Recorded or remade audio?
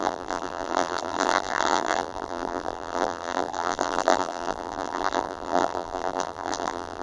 remade